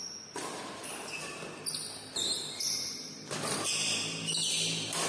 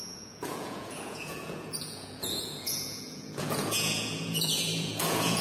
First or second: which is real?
first